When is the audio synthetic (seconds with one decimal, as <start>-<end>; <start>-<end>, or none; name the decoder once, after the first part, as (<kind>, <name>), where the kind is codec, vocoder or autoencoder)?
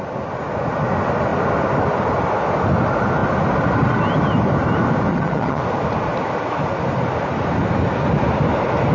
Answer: 5.1-5.6 (vocoder, HiFi-GAN)